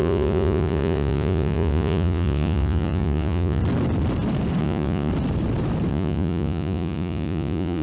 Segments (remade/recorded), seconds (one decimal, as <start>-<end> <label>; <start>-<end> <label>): 0.0-3.6 remade; 3.6-4.6 recorded; 4.6-5.1 remade; 5.1-5.9 recorded; 5.9-7.8 remade